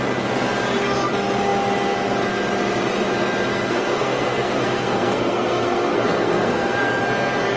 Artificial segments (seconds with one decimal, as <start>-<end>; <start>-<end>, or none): 3.5-7.0